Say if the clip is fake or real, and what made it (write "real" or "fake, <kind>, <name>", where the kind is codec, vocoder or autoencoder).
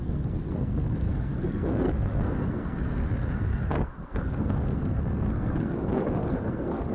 fake, codec, SNAC